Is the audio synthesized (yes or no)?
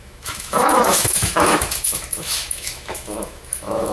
yes